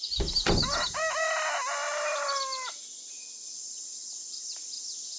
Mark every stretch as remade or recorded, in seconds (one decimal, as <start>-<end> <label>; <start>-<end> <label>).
0.0-5.2 recorded